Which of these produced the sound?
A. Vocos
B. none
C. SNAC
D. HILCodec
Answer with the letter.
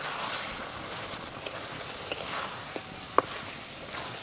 B